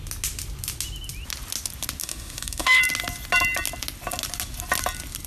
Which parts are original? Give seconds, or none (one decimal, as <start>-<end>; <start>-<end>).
0.0-2.0; 2.8-5.3